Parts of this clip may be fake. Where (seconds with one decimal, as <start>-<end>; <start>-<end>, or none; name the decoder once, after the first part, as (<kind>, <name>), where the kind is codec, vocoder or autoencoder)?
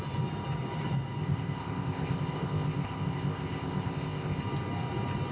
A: 1.2-4.4 (codec, ZipCodec)